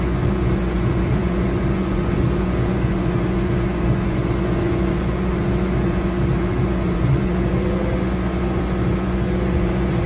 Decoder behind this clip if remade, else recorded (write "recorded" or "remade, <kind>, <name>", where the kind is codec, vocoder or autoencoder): remade, vocoder, Vocos